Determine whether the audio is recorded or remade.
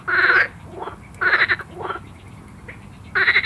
recorded